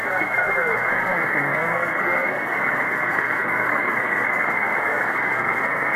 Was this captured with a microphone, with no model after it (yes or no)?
no